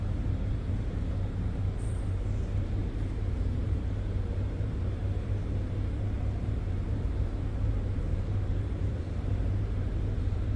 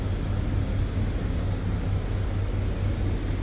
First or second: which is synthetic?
first